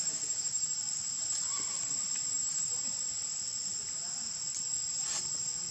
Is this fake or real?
real